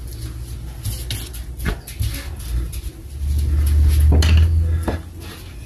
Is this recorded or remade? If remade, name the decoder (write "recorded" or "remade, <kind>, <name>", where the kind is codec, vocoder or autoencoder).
recorded